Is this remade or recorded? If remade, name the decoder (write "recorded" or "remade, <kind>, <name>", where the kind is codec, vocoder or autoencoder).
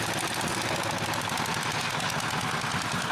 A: recorded